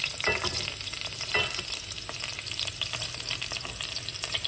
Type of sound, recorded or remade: recorded